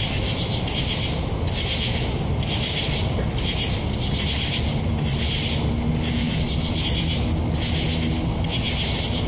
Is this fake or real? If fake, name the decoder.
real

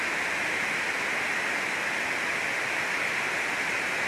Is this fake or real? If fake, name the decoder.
real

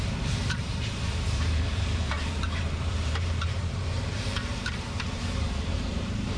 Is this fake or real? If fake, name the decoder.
fake, vocoder, BigVGAN v2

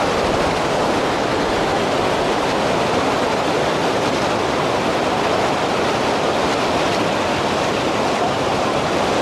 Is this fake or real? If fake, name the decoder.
real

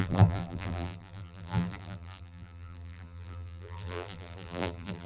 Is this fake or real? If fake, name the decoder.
fake, vocoder, BigVGAN v2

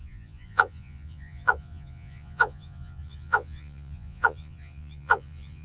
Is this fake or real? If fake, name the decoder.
fake, vocoder, Vocos